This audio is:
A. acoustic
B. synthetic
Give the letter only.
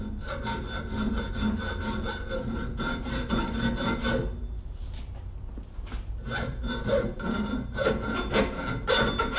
A